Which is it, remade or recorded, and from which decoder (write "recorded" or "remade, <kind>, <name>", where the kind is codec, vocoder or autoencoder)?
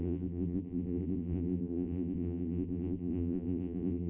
remade, vocoder, BigVGAN v2